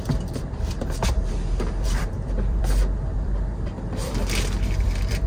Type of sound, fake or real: fake